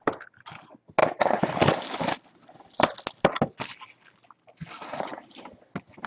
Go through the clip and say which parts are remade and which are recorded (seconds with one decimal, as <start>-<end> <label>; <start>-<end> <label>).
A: 0.0-6.1 recorded